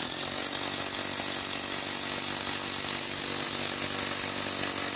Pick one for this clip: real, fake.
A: real